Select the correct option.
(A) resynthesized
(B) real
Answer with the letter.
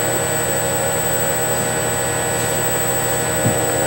B